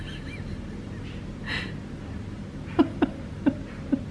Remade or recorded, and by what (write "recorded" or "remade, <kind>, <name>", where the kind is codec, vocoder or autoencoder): recorded